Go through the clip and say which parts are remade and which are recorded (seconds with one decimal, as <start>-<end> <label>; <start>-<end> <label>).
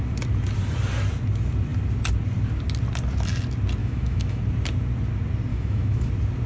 0.0-3.8 recorded; 3.8-4.4 remade; 4.4-5.5 recorded; 5.5-6.1 remade; 6.1-6.5 recorded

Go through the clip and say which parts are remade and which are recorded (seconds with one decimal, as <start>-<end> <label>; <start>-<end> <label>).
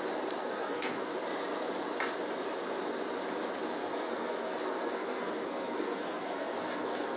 0.0-0.4 recorded; 0.4-1.1 remade; 1.1-3.8 recorded; 3.8-7.2 remade